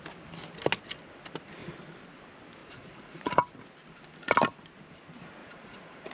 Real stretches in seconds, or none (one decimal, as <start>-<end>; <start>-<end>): 0.0-2.6; 3.3-5.4